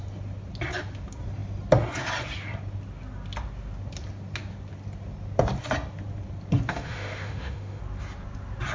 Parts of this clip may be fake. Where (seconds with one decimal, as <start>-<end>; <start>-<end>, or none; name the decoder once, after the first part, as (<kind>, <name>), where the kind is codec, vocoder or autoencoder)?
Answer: 6.7-7.8 (autoencoder, DAC-VAE)